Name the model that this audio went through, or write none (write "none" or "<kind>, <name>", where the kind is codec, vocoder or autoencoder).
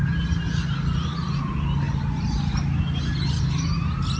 none